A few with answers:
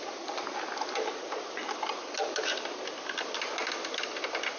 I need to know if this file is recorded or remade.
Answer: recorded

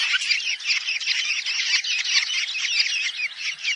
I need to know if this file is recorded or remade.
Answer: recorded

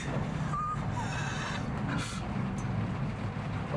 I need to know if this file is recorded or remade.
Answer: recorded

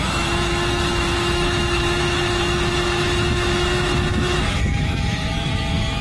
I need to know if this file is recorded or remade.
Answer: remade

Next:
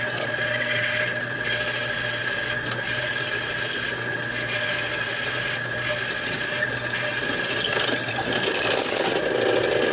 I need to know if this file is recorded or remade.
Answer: recorded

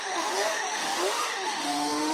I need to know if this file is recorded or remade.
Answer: remade